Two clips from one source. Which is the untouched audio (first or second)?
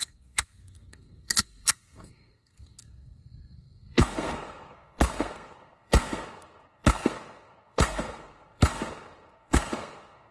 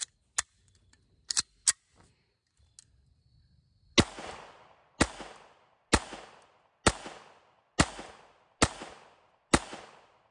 second